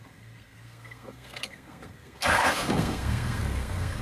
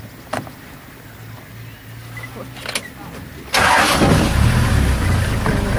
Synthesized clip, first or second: first